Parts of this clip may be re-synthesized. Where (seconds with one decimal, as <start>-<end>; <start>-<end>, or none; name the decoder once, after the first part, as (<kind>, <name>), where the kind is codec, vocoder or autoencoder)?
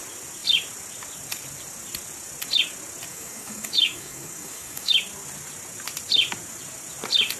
3.1-4.9 (codec, DAC)